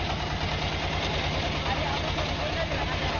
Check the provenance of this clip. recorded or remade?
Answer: recorded